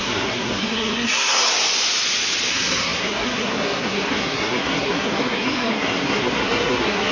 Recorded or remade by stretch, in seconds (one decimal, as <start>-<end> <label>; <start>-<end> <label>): 0.0-1.5 remade; 1.5-2.5 recorded; 2.5-7.1 remade

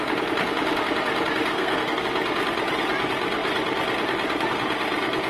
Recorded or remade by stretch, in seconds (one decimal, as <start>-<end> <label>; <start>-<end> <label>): 0.0-1.5 recorded; 1.5-2.0 remade; 2.0-5.3 recorded

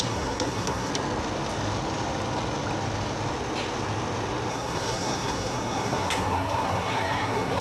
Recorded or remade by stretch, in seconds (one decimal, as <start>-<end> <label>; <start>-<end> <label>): 0.0-0.9 remade; 0.9-4.5 recorded; 4.5-7.6 remade

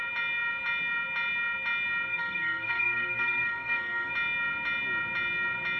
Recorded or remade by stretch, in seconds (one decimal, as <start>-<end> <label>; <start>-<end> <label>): 0.0-2.1 recorded; 2.1-4.1 remade; 4.1-5.8 recorded

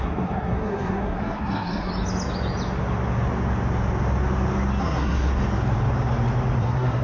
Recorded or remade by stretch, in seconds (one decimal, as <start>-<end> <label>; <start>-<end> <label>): 0.0-1.9 remade; 1.9-4.8 recorded; 4.8-5.3 remade; 5.3-6.6 recorded; 6.6-7.0 remade

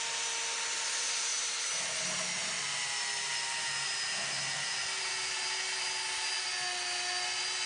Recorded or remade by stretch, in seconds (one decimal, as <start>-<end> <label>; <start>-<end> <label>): 0.0-7.7 recorded

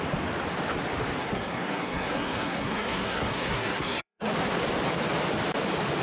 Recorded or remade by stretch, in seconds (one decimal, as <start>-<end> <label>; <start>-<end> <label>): 0.0-1.2 recorded; 1.2-4.3 remade; 4.3-6.0 recorded

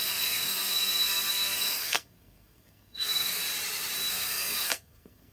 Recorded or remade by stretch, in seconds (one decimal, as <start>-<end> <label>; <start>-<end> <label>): 0.0-3.4 remade; 3.4-4.1 recorded; 4.1-5.3 remade